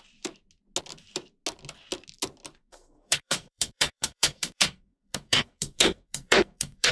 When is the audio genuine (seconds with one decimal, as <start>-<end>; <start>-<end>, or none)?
0.0-2.6